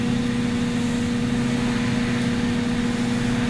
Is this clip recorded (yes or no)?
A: yes